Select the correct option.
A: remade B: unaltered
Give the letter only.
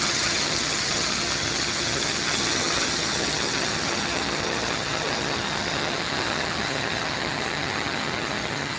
A